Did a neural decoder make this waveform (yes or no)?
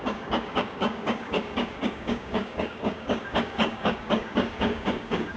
yes